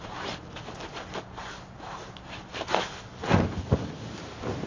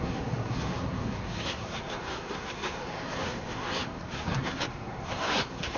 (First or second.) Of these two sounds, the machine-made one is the second